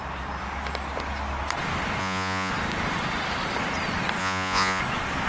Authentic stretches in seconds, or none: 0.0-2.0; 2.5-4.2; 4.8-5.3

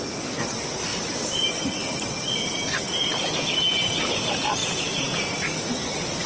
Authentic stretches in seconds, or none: 0.0-4.6; 5.3-6.3

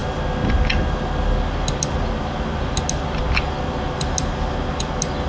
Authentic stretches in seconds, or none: 0.0-5.3

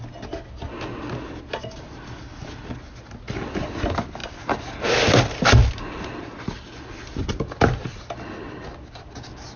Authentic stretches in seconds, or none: 0.0-9.6

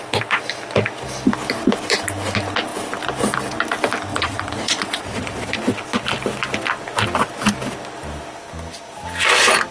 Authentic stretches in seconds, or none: 0.0-4.1; 5.6-9.7

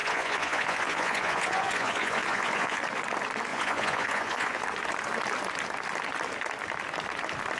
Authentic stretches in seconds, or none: 2.8-3.5; 4.6-7.6

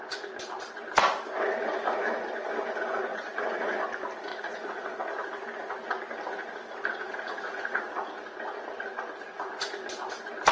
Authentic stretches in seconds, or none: 0.0-3.1; 3.8-4.3; 5.0-6.9; 7.8-10.5